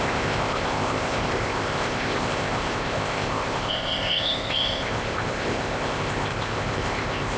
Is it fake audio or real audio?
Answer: fake